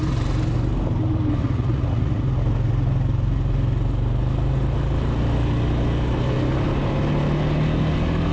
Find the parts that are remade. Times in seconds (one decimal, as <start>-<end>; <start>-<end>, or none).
1.4-2.2